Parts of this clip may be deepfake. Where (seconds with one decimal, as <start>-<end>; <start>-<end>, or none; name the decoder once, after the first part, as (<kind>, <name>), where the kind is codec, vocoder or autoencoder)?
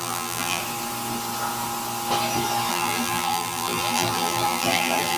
0.0-0.6 (vocoder, BigVGAN v2); 2.7-5.2